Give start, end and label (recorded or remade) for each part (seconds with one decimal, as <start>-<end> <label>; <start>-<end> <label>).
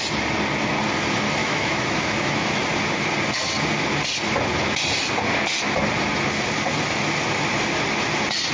0.0-1.4 recorded; 1.4-2.6 remade; 2.6-8.5 recorded